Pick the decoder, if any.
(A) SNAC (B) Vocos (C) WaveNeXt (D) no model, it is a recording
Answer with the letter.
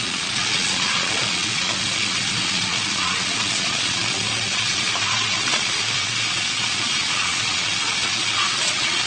B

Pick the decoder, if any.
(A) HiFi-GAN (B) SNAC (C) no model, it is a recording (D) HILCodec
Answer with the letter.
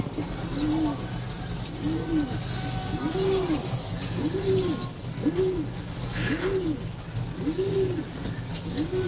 C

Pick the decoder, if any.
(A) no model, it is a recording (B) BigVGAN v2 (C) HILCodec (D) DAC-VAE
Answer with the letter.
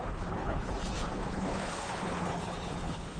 C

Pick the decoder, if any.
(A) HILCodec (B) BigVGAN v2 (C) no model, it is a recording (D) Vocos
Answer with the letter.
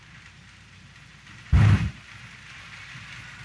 C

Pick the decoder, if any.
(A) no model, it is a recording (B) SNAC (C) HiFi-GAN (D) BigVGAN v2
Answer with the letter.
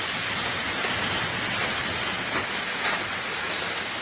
A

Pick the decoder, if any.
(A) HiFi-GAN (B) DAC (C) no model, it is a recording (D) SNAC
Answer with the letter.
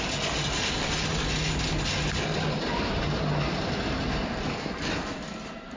C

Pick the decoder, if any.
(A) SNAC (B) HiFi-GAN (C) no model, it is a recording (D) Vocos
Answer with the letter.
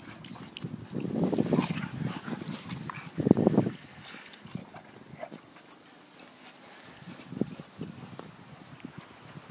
C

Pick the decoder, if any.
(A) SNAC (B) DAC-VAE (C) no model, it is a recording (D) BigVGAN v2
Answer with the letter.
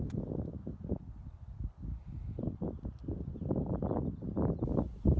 C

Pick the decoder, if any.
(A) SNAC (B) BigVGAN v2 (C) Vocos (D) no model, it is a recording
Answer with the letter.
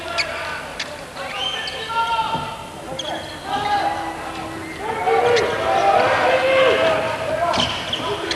D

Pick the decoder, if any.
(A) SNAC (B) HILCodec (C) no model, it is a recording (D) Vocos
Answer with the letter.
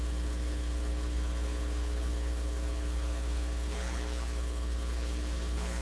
B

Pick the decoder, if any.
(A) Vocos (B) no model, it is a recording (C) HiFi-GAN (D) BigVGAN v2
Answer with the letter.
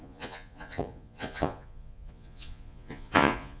A